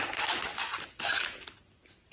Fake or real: real